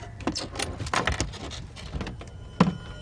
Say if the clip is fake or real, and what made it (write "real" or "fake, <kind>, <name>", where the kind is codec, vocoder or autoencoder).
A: real